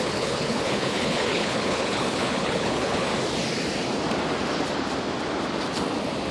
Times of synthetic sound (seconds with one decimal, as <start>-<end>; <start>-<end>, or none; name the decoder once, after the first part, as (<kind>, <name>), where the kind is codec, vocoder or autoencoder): 0.0-3.1 (codec, HILCodec)